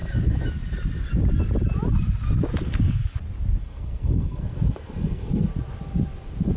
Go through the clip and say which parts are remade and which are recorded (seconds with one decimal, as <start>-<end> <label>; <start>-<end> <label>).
0.0-2.6 recorded; 2.6-3.0 remade; 3.0-3.6 recorded; 3.6-5.5 remade; 5.5-6.6 recorded